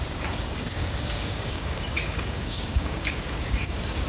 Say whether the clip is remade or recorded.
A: remade